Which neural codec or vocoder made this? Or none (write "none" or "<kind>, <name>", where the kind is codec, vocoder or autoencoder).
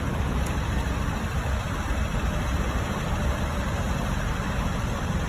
vocoder, BigVGAN v2